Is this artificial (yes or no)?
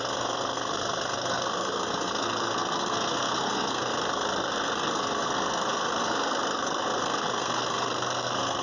yes